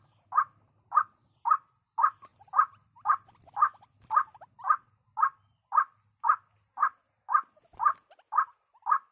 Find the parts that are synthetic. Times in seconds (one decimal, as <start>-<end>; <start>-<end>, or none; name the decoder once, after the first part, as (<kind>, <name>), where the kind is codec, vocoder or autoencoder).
2.3-3.1 (vocoder, BigVGAN v2)